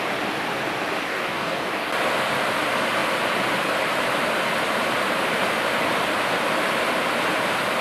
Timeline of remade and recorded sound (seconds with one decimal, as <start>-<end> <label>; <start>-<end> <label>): 0.0-1.1 recorded; 1.1-1.9 remade; 1.9-7.8 recorded